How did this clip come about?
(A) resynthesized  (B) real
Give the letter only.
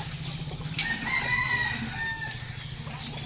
B